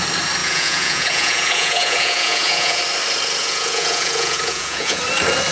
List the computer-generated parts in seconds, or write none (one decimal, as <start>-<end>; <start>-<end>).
0.4-2.8; 3.4-5.0